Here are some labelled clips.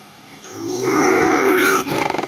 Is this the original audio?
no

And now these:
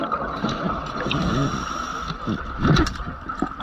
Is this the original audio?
yes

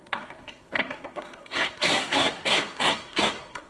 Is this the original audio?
no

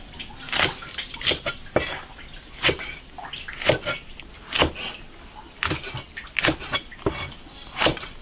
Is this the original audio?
yes